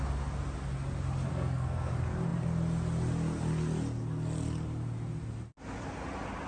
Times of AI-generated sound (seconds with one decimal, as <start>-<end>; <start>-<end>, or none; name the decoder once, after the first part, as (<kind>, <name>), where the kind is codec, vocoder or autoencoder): 1.3-1.9 (codec, SNAC)